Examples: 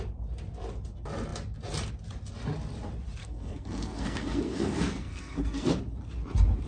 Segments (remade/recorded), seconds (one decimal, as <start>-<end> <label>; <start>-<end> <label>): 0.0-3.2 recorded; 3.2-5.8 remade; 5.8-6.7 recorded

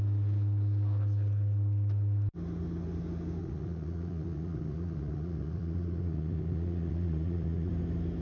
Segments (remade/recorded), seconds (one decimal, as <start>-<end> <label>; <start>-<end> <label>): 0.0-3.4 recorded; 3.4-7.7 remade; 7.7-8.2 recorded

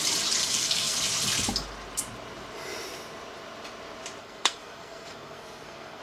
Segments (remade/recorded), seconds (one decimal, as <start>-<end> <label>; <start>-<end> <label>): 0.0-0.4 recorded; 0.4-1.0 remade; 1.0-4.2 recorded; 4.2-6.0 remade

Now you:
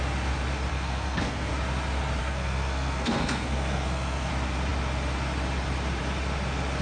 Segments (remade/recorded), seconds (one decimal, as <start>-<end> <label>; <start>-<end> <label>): 0.0-0.7 recorded; 0.7-1.5 remade; 1.5-2.2 recorded; 2.2-4.3 remade; 4.3-6.8 recorded

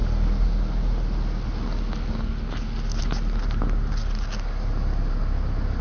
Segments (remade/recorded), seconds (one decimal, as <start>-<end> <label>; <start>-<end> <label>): 0.0-5.8 recorded

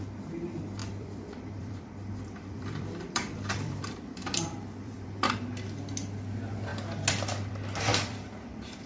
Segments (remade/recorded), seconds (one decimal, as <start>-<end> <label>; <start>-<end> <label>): 0.0-0.8 recorded; 0.8-5.3 remade; 5.3-7.9 recorded; 7.9-8.9 remade